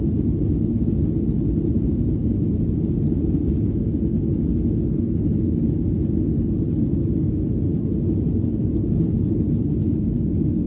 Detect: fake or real real